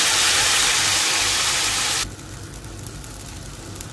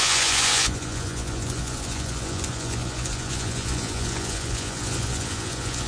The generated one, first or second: second